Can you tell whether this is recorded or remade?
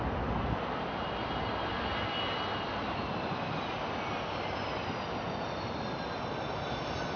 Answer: recorded